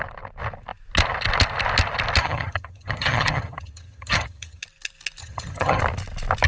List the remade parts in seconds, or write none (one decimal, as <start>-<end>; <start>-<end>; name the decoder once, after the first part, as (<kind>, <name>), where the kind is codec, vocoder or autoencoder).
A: 2.2-4.6 (vocoder, HiFi-GAN); 5.2-5.8